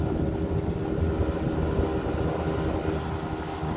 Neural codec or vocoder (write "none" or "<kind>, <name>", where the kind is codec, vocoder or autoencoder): none